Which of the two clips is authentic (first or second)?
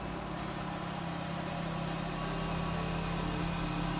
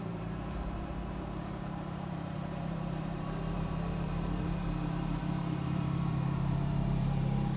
first